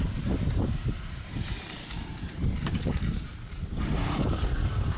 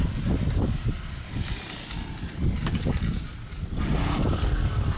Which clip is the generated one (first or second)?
first